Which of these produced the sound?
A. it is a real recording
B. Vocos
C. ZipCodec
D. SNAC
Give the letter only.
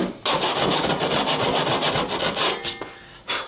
A